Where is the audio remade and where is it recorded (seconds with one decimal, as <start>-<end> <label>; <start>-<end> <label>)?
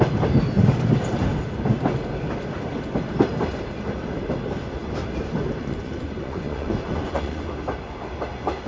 0.0-5.6 recorded; 5.6-7.5 remade; 7.5-8.7 recorded